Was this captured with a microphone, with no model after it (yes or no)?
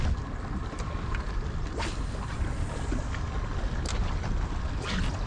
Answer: yes